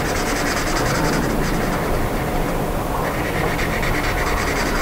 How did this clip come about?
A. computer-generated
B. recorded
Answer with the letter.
A